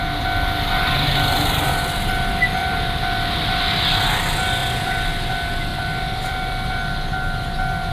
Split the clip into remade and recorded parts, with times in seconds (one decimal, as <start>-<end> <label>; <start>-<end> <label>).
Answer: 0.0-2.6 recorded; 2.6-3.6 remade; 3.6-4.6 recorded; 4.6-5.1 remade; 5.1-5.7 recorded; 5.7-6.7 remade; 6.7-7.9 recorded